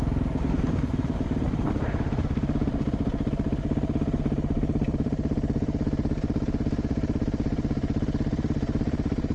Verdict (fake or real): fake